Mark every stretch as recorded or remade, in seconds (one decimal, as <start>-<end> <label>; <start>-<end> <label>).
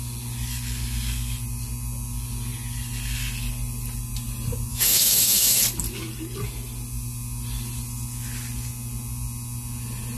0.0-4.7 recorded; 4.7-5.6 remade; 5.6-10.2 recorded